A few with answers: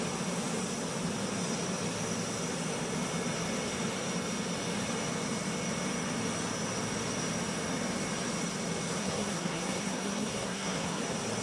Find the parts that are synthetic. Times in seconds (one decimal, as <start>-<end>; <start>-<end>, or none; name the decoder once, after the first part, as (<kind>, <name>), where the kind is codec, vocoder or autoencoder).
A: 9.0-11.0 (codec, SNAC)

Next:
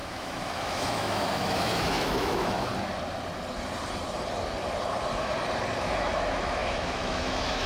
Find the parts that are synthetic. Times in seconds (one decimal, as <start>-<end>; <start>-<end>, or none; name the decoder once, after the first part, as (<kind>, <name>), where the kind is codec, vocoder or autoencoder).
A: 0.0-2.7 (autoencoder, DAC-VAE); 5.8-7.7

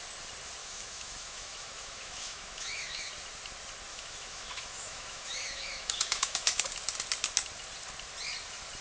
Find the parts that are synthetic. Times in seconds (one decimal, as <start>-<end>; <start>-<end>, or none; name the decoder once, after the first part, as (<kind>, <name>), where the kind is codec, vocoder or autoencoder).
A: 0.6-3.1 (autoencoder, DAC-VAE); 3.9-6.6

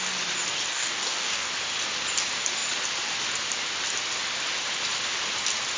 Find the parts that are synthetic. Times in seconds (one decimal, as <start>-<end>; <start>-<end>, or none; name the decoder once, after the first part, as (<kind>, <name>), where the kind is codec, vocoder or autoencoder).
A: 0.7-1.5 (codec, DAC)